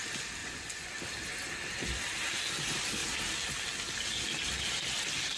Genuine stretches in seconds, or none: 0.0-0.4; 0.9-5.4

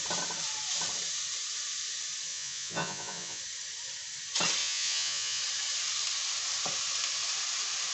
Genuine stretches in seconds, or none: 0.0-2.3; 3.4-4.6; 5.4-7.9

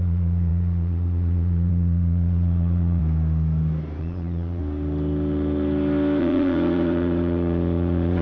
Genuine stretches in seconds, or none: 3.0-4.0; 4.6-6.2

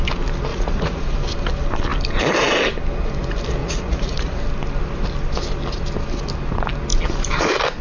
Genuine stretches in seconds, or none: 0.0-0.5; 1.0-3.6; 4.4-7.8

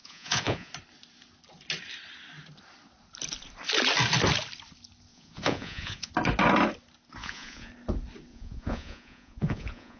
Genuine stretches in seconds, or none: 0.7-5.1; 6.1-7.2; 7.7-8.3

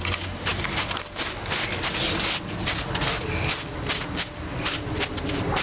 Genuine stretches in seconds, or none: 0.0-5.6

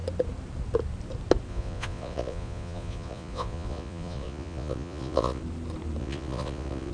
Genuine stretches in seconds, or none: 0.0-1.5; 5.4-6.0

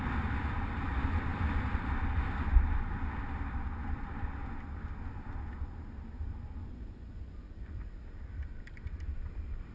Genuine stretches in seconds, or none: 0.0-6.6; 7.8-9.7